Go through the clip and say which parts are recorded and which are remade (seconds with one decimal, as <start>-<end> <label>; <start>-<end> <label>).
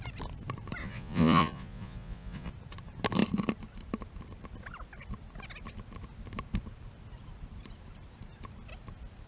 0.0-0.8 recorded; 0.8-2.5 remade; 2.5-9.3 recorded